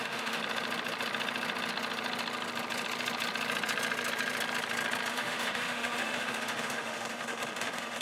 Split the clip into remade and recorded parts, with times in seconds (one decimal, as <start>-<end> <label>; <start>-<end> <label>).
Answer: 0.0-0.4 remade; 0.4-5.1 recorded; 5.1-8.0 remade